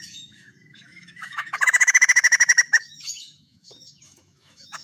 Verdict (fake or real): fake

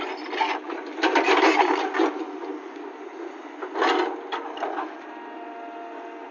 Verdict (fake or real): real